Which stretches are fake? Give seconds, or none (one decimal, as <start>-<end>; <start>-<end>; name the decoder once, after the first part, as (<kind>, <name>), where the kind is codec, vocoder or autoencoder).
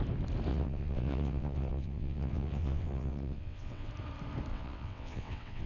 0.5-3.9 (vocoder, WaveNeXt); 4.5-5.7